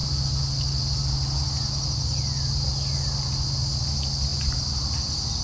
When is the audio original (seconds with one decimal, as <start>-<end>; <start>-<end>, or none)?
0.0-5.4